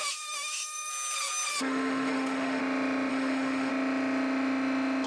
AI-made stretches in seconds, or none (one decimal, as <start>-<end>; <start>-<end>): 0.0-0.9; 1.5-2.6; 3.1-3.7